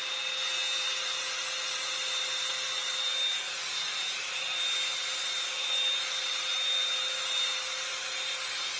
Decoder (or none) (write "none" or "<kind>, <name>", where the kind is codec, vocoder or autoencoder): none